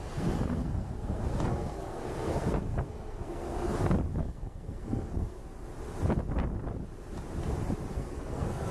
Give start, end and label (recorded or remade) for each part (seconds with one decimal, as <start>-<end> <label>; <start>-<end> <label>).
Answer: 0.0-3.7 remade; 3.7-4.2 recorded; 4.2-5.4 remade; 5.4-7.9 recorded; 7.9-8.7 remade